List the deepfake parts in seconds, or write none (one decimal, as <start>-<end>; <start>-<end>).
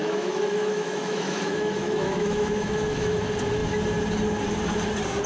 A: 0.0-3.2